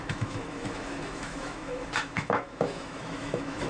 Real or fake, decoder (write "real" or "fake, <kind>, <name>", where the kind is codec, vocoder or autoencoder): fake, autoencoder, DAC-VAE